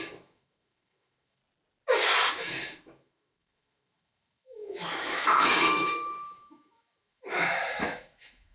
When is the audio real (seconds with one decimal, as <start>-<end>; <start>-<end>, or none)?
1.4-2.3